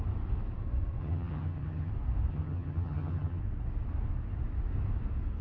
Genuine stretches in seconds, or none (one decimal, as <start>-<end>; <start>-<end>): 0.0-1.0; 1.9-2.3; 3.4-5.4